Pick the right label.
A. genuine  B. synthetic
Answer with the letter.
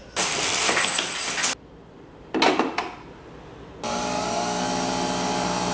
A